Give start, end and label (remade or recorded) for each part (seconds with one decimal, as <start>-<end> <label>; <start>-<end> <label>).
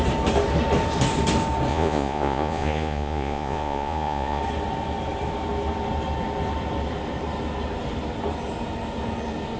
0.0-1.7 recorded; 1.7-4.4 remade; 4.4-9.6 recorded